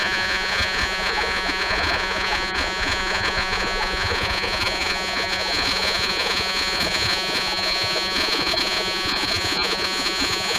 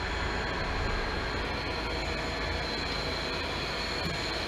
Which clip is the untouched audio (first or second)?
second